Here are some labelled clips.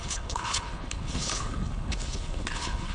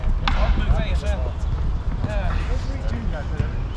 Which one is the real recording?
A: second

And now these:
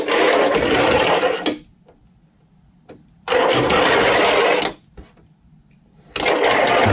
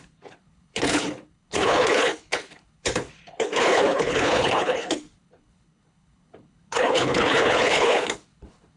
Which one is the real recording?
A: first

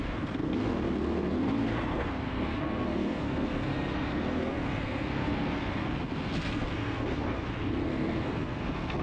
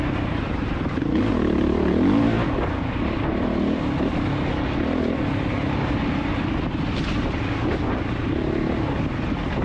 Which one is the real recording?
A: second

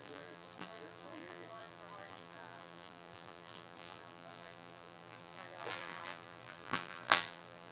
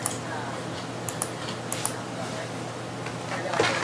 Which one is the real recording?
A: second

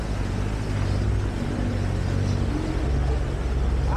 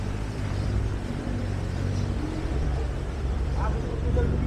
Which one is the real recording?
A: first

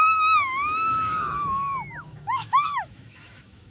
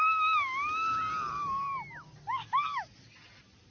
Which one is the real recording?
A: second